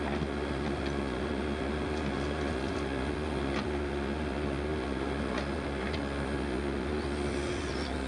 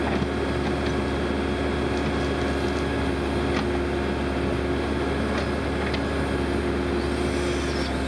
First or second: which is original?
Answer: second